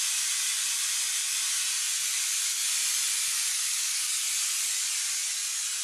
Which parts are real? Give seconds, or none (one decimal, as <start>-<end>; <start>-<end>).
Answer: 0.0-3.5; 4.3-5.8